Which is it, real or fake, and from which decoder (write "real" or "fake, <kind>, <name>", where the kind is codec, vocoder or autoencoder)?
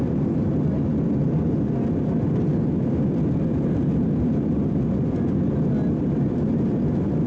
real